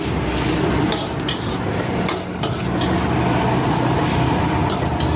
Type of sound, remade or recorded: recorded